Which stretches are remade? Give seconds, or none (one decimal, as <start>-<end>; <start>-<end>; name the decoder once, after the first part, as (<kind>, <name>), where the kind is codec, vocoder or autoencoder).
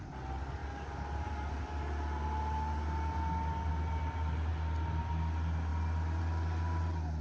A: none